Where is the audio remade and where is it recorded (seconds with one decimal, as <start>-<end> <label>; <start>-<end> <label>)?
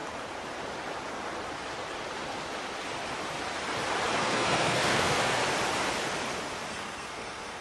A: 0.0-4.2 recorded; 4.2-5.4 remade; 5.4-6.7 recorded; 6.7-7.6 remade